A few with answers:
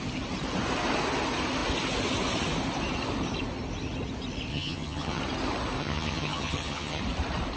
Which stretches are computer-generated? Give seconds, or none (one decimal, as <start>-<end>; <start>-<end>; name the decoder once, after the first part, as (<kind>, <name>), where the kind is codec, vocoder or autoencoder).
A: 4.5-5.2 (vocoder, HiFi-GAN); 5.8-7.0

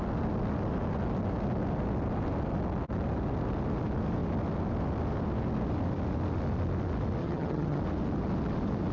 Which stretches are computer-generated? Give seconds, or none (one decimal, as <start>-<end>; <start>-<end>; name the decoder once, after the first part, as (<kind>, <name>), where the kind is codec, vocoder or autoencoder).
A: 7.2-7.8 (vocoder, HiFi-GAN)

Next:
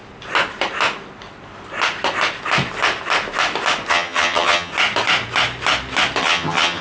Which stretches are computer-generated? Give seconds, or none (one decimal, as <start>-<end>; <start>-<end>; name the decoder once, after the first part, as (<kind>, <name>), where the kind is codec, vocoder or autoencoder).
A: 3.9-4.7 (vocoder, HiFi-GAN); 6.2-6.8

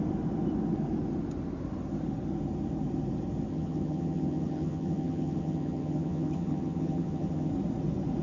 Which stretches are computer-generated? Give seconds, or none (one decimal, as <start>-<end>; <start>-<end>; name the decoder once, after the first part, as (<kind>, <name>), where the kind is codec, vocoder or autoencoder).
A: 3.5-7.5 (vocoder, HiFi-GAN)

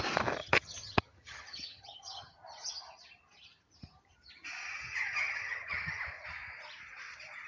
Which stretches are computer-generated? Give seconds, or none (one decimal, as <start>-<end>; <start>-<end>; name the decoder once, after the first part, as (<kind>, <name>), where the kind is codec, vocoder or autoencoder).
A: 0.4-2.3 (vocoder, HiFi-GAN); 4.6-6.0

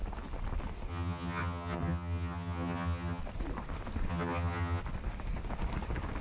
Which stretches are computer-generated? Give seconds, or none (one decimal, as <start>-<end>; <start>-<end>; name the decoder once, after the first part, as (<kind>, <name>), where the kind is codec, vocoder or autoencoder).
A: 0.9-3.2 (vocoder, HiFi-GAN); 4.1-4.8

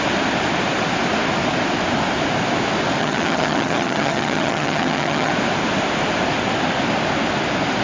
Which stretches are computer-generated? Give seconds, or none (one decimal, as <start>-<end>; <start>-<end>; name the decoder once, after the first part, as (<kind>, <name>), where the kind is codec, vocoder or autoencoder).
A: 3.0-5.3 (vocoder, HiFi-GAN)